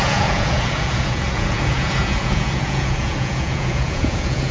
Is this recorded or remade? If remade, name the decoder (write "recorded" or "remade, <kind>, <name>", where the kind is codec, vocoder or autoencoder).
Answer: remade, vocoder, Vocos